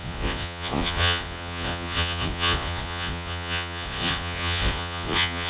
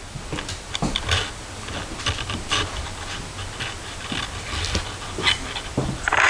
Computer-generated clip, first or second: first